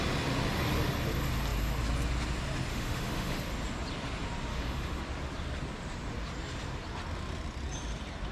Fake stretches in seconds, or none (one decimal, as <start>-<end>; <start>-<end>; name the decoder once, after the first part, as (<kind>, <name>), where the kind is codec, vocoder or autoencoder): 2.7-3.4 (autoencoder, DAC-VAE); 4.5-5.0